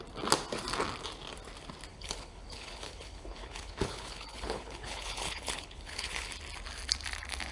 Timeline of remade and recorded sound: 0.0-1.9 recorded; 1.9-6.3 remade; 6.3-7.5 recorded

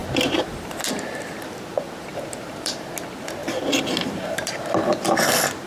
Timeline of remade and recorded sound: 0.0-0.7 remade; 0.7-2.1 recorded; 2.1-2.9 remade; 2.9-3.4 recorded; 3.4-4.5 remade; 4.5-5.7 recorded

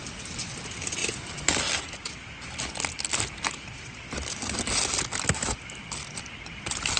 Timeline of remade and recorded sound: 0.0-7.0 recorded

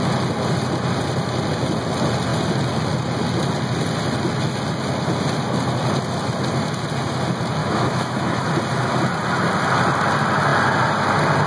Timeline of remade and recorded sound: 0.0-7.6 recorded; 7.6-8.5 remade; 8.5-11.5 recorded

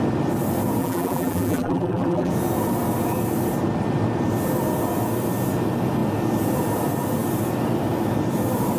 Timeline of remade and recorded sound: 0.0-0.8 recorded; 0.8-2.3 remade; 2.3-8.8 recorded

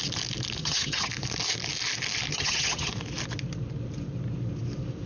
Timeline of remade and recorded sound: 0.0-0.6 recorded; 0.6-1.1 remade; 1.1-2.3 recorded; 2.3-2.9 remade; 2.9-5.1 recorded

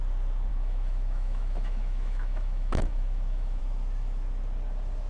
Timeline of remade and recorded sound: 0.0-0.5 recorded; 0.5-3.6 remade; 3.6-5.1 recorded